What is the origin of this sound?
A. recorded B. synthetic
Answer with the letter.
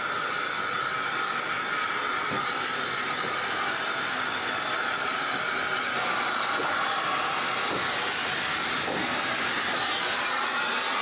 A